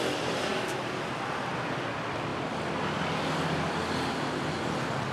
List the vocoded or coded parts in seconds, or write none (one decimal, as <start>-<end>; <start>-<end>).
none